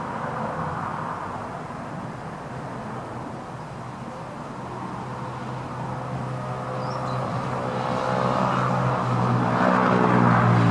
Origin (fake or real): real